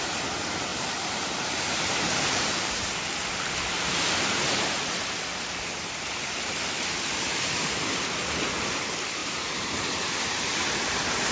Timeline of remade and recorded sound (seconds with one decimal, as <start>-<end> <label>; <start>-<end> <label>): 0.0-0.7 recorded; 0.7-3.0 remade; 3.0-9.2 recorded; 9.2-9.8 remade; 9.8-11.3 recorded